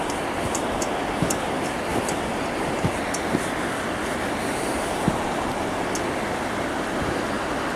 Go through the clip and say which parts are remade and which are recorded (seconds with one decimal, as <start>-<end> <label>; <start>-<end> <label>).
0.0-7.8 recorded